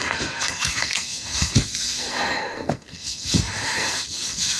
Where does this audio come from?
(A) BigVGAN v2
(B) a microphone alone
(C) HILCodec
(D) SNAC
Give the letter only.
D